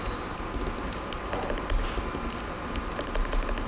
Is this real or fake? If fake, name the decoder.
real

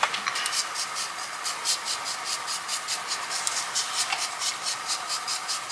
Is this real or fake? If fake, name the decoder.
real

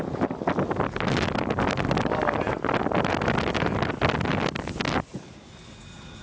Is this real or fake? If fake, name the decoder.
real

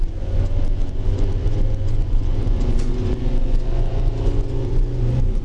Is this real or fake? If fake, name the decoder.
fake, vocoder, Vocos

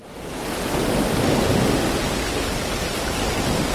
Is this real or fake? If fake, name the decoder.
real